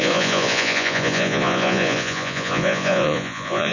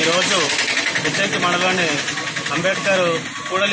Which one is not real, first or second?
first